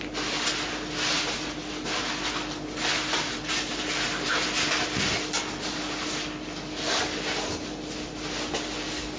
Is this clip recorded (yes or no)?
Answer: yes